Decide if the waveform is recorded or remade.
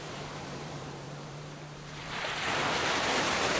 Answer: remade